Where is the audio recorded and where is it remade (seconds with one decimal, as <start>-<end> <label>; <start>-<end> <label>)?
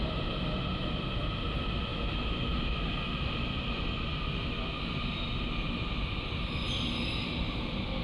0.0-8.0 recorded